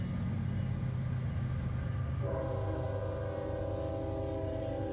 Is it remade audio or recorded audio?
recorded